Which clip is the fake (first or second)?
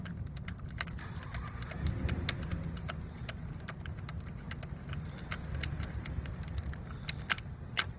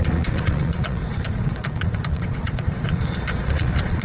second